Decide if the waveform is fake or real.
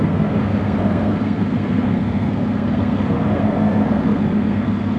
fake